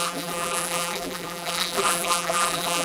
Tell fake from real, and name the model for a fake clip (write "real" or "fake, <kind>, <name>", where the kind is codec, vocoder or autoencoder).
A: fake, vocoder, BigVGAN v2